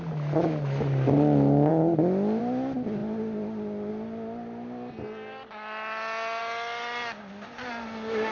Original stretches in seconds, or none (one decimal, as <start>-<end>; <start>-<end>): 0.0-8.3